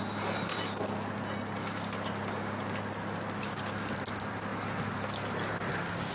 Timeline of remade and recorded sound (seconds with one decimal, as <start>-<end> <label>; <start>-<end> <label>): 0.0-6.1 recorded